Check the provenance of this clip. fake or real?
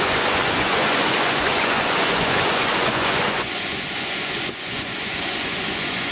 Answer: fake